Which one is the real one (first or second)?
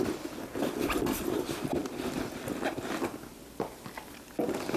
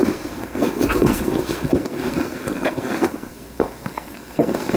first